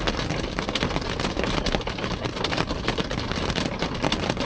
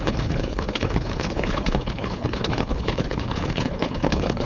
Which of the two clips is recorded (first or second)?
first